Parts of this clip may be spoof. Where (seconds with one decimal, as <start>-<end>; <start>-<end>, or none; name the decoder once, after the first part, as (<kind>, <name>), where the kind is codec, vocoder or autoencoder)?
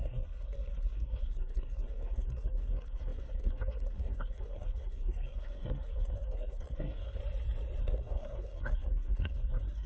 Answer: 0.0-7.2 (codec, SNAC); 7.8-9.9